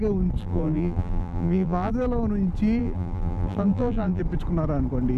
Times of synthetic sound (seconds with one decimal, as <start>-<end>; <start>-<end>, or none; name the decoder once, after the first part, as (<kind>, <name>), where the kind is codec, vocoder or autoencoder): 0.4-1.9 (vocoder, BigVGAN v2); 2.8-4.2